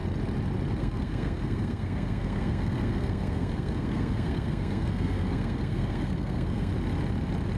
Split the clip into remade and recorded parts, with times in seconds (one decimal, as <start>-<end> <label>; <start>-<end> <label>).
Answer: 0.0-0.8 recorded; 0.8-6.7 remade; 6.7-7.6 recorded